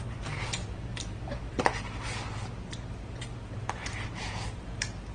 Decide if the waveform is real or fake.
fake